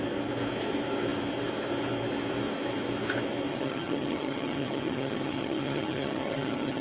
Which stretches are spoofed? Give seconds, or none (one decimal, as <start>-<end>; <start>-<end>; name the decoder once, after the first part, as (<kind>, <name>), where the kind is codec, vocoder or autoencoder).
3.5-6.8 (vocoder, HiFi-GAN)